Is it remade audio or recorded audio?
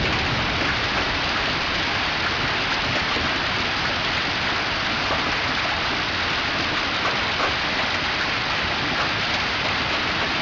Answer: recorded